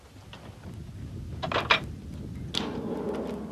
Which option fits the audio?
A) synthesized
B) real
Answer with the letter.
B